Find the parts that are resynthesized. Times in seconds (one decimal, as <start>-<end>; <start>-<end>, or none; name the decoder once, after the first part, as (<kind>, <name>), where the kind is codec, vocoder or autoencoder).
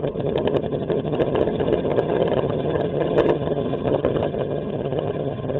0.0-5.6 (vocoder, HiFi-GAN)